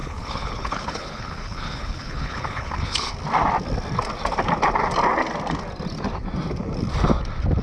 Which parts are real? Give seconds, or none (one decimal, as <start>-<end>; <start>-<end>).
3.1-7.6